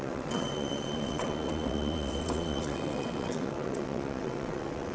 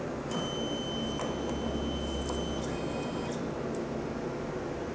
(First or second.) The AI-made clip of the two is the first